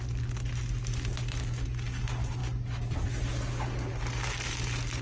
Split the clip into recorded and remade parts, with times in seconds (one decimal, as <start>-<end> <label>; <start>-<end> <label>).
0.0-5.0 recorded